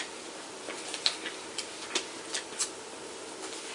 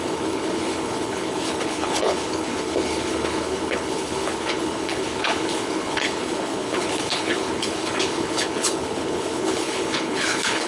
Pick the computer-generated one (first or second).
second